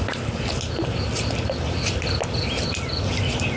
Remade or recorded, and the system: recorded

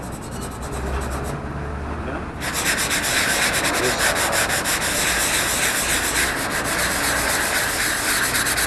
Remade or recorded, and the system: recorded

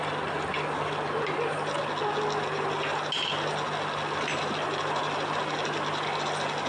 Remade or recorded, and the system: recorded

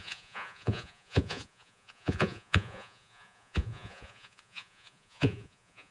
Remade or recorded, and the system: remade, vocoder, Vocos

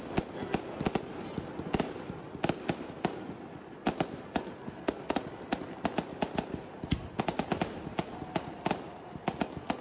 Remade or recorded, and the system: recorded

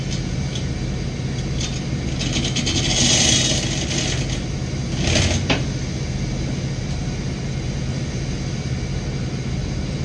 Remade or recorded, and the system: recorded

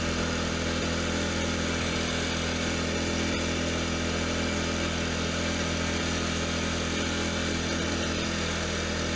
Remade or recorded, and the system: recorded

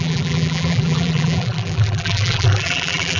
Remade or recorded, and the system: remade, vocoder, BigVGAN v2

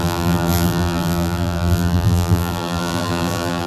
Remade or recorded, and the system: remade, vocoder, BigVGAN v2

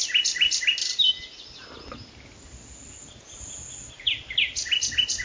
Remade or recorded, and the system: recorded